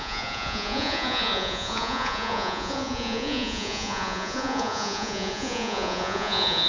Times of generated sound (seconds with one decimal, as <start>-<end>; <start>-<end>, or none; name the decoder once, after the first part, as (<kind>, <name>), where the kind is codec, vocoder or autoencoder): 0.0-6.7 (vocoder, Vocos)